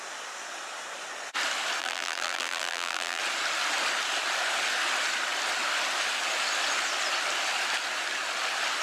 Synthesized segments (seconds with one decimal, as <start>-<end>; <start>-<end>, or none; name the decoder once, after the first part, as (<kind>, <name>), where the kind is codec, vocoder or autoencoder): 1.8-3.2 (vocoder, BigVGAN v2)